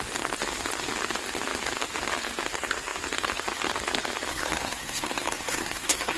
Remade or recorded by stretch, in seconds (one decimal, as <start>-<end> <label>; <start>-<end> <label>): 0.0-4.3 recorded; 4.3-6.2 remade